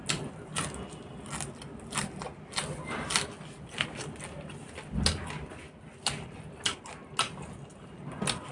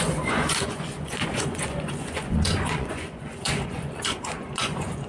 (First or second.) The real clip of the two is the first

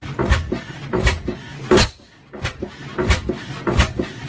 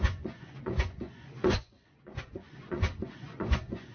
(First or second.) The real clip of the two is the first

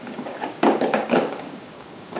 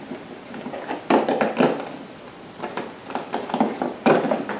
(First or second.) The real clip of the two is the second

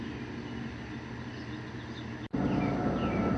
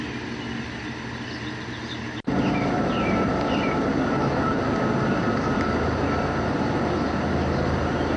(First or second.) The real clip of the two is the first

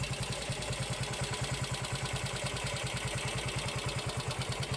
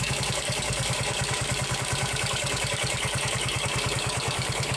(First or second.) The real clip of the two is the first